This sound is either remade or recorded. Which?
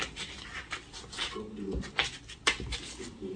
recorded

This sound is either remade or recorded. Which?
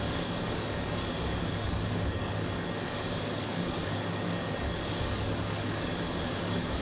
remade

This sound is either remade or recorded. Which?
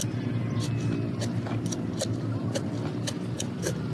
recorded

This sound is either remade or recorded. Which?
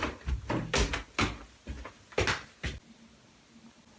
recorded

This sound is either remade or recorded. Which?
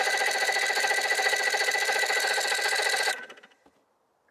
recorded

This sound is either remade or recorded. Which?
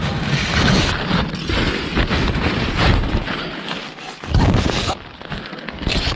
recorded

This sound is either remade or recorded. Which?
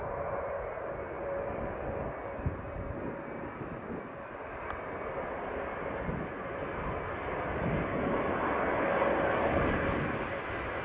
recorded